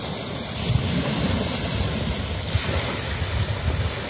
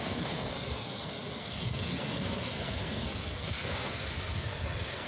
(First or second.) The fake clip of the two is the second